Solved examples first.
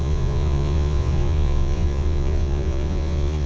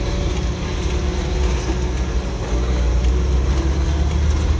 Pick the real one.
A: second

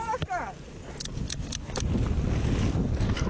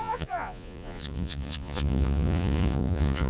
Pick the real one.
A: first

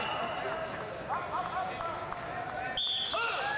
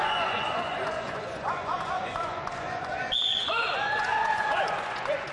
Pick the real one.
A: first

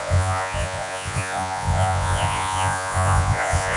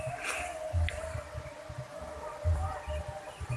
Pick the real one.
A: second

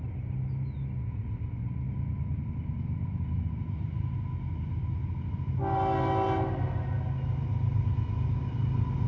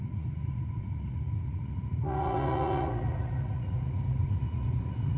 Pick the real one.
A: first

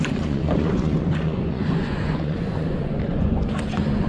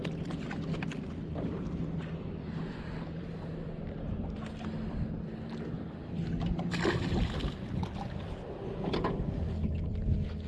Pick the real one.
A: second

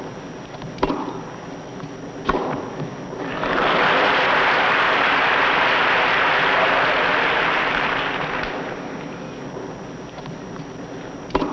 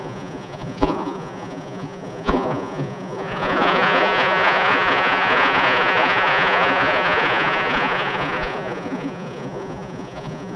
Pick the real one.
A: first